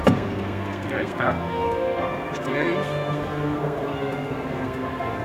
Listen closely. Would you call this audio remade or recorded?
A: remade